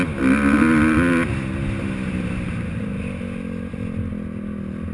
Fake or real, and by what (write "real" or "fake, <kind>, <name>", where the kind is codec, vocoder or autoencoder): real